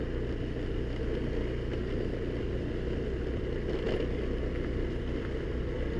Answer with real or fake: real